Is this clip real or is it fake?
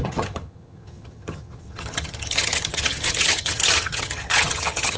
fake